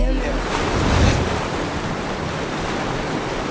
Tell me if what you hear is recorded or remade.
recorded